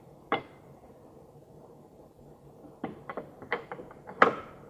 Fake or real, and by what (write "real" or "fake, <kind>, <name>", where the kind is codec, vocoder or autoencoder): fake, vocoder, BigVGAN v2